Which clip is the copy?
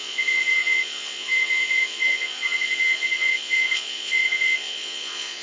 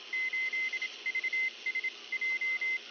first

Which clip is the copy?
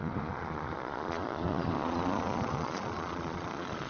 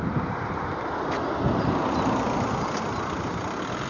first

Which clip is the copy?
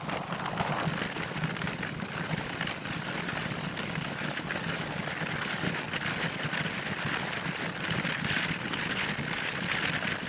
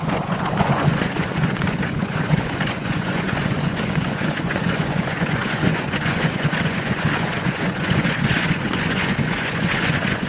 second